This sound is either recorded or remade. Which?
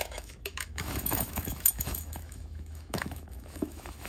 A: remade